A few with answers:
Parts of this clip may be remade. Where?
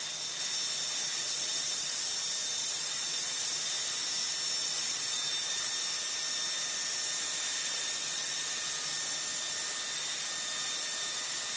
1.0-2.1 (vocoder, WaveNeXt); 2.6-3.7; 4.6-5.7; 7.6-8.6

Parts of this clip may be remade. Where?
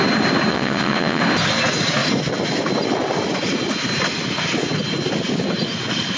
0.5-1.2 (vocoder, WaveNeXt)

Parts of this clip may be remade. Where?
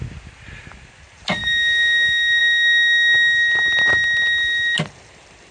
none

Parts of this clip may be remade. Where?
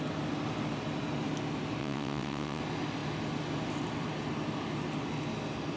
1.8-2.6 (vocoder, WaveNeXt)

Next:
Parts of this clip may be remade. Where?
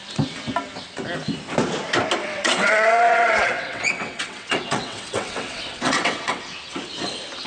2.2-6.4 (vocoder, WaveNeXt)